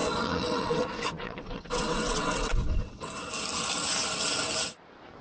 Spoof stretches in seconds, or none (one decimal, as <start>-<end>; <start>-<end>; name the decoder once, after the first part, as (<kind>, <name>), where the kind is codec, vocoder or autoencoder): 0.0-3.1 (vocoder, WaveNeXt)